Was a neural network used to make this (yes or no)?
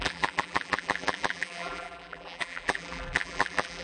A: yes